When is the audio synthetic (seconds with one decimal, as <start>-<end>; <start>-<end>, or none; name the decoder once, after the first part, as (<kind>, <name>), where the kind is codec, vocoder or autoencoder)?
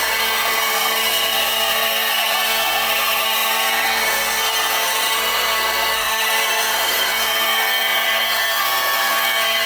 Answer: 0.0-9.7 (codec, SNAC)